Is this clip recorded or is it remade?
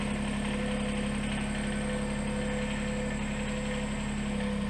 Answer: recorded